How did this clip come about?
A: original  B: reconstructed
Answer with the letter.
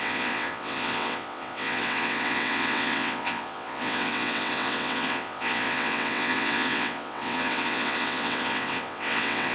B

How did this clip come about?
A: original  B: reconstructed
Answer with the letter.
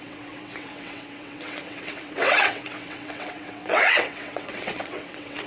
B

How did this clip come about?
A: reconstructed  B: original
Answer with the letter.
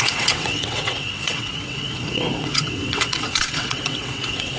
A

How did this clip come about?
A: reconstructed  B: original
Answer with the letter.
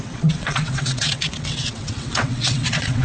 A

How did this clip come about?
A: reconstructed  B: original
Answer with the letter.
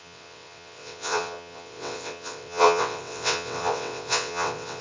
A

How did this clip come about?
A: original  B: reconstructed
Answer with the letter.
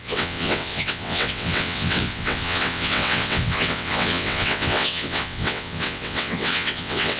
B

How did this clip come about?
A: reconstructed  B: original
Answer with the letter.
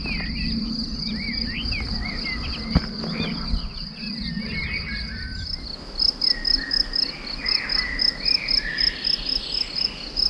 B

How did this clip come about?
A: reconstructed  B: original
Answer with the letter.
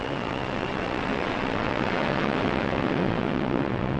A